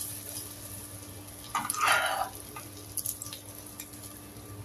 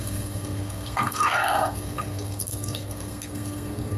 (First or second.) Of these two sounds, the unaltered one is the first